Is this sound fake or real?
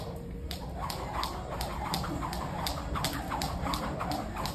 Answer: real